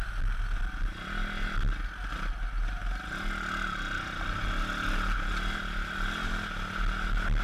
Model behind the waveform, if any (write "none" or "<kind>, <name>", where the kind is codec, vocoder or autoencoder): none